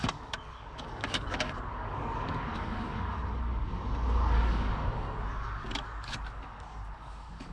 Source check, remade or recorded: remade